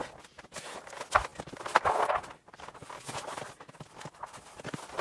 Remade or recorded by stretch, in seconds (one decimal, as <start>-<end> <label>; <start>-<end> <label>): 0.0-5.0 recorded